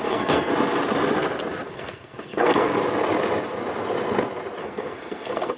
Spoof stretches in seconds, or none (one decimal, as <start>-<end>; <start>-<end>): 0.0-0.5; 1.7-2.7; 4.6-5.6